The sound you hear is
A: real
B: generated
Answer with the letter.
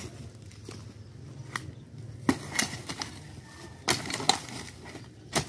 A